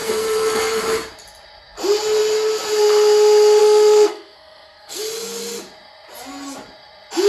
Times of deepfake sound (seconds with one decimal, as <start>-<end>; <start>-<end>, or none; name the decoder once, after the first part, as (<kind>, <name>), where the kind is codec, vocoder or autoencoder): 0.0-0.8 (codec, SNAC); 3.6-5.0